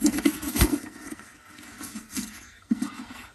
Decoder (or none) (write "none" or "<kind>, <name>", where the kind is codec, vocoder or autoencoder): codec, SNAC